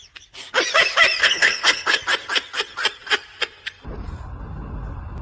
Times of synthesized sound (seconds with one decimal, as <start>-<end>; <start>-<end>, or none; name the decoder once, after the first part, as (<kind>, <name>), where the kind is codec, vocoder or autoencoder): 1.2-2.0 (codec, HILCodec)